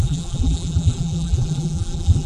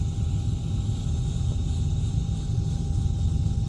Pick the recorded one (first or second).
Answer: second